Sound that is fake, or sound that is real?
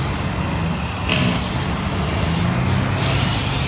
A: real